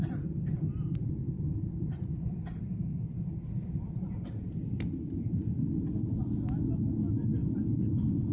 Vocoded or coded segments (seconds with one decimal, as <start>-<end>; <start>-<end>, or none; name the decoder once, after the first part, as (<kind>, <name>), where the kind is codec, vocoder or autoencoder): 7.4-8.3 (vocoder, BigVGAN v2)